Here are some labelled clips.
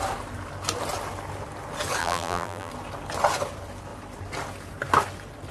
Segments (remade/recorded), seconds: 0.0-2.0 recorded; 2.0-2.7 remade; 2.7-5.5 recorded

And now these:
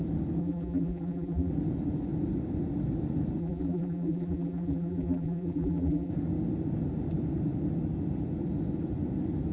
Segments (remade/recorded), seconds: 0.0-0.4 recorded; 0.4-1.5 remade; 1.5-3.4 recorded; 3.4-6.1 remade; 6.1-9.5 recorded

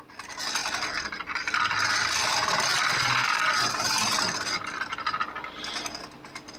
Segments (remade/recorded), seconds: 0.0-6.6 recorded

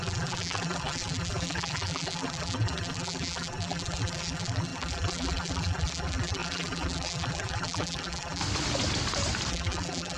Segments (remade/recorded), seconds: 0.0-8.4 remade; 8.4-9.5 recorded; 9.5-10.2 remade

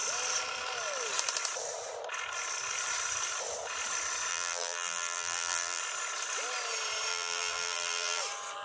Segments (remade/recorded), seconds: 0.0-4.3 recorded; 4.3-5.8 remade; 5.8-7.1 recorded; 7.1-8.2 remade; 8.2-8.6 recorded

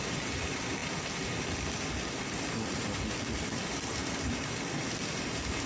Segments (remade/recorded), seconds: 0.0-0.8 remade; 0.8-2.1 recorded; 2.1-5.7 remade